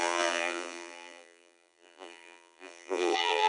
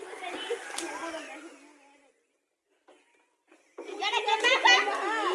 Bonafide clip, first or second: second